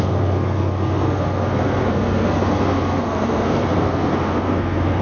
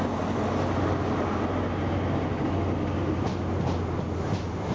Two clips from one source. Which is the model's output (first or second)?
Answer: first